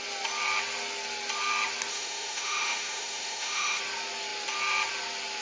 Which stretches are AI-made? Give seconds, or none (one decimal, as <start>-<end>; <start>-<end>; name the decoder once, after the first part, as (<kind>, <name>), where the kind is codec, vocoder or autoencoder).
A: 1.9-3.8 (autoencoder, DAC-VAE)